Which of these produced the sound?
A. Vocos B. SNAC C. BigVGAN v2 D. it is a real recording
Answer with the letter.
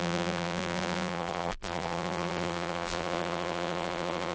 C